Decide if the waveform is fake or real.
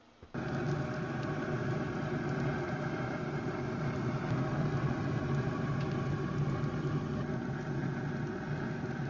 real